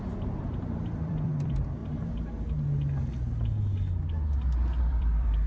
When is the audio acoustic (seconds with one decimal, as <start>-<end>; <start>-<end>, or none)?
1.8-4.8